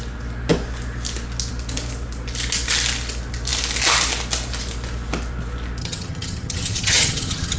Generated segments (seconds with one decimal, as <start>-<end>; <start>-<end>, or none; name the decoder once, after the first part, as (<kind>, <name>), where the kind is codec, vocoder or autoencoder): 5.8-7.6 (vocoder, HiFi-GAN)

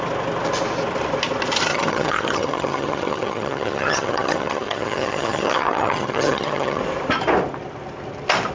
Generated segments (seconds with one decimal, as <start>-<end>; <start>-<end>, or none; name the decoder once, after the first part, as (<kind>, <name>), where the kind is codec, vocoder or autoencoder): 1.7-6.8 (vocoder, HiFi-GAN)

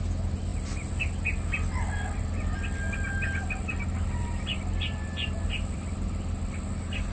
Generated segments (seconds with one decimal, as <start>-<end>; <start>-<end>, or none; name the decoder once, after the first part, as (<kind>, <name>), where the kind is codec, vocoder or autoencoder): none